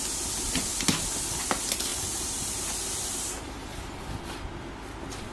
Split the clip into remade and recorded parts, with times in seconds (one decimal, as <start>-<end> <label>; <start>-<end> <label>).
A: 0.0-1.9 recorded; 1.9-4.0 remade; 4.0-5.3 recorded